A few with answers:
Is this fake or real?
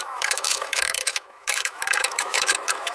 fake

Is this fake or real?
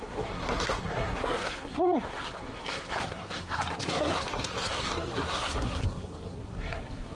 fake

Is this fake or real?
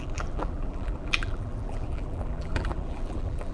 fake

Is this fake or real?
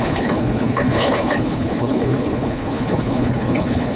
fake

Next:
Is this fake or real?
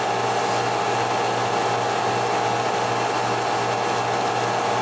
real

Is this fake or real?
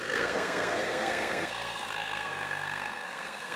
fake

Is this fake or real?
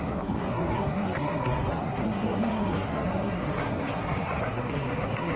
fake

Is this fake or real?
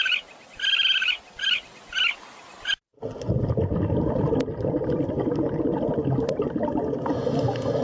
real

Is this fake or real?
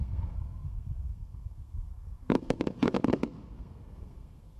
fake